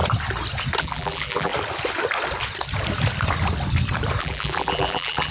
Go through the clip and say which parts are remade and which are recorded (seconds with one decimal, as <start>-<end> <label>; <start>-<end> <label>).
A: 0.0-0.8 recorded; 0.8-1.5 remade; 1.5-4.2 recorded; 4.2-5.3 remade